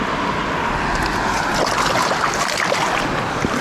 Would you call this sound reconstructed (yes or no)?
no